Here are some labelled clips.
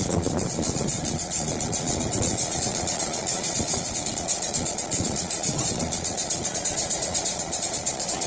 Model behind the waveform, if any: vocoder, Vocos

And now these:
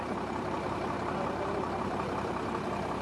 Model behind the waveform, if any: vocoder, BigVGAN v2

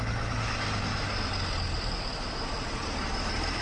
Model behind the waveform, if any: none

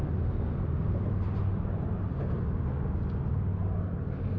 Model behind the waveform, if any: none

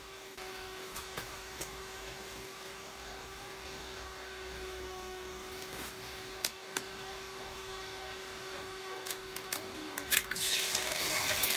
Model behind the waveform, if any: codec, DAC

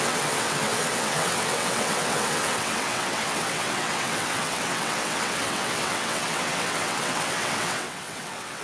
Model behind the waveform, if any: vocoder, WaveNeXt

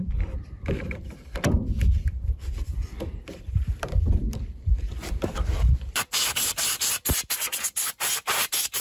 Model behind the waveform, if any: vocoder, BigVGAN v2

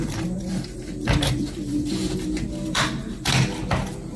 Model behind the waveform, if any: vocoder, BigVGAN v2